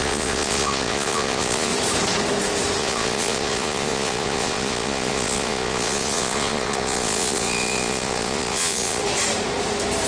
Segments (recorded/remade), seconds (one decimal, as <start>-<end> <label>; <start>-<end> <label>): 0.0-1.7 remade; 1.7-2.8 recorded; 2.8-9.0 remade; 9.0-10.1 recorded